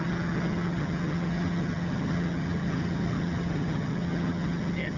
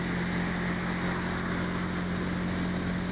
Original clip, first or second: second